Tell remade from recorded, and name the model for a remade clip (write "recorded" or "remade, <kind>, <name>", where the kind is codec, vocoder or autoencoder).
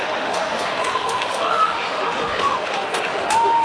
remade, autoencoder, DAC-VAE